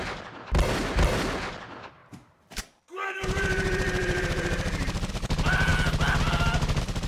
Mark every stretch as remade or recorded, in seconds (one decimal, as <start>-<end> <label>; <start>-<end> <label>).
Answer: 0.0-2.0 recorded; 2.0-5.1 remade; 5.1-7.1 recorded